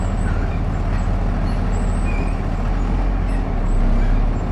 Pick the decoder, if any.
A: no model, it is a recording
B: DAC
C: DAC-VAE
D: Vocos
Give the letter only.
A